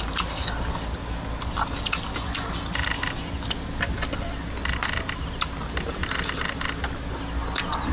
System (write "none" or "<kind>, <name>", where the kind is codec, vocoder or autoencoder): none